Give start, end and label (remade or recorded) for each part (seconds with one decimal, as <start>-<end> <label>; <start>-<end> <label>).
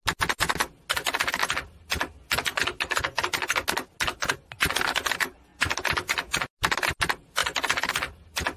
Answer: 0.0-8.6 recorded